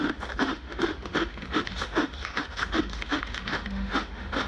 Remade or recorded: remade